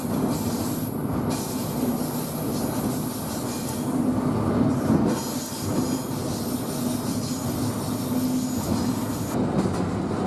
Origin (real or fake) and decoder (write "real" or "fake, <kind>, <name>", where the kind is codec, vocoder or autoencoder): real